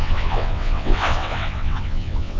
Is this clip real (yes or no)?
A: no